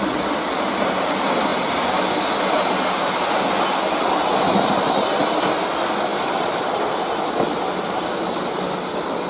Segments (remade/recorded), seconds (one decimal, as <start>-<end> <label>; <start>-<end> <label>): 0.0-9.3 recorded